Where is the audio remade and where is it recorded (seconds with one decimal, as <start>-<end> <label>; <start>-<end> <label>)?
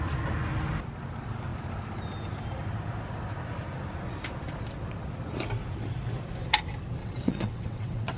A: 0.0-7.0 recorded; 7.0-8.2 remade